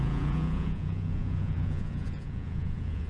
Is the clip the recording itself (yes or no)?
no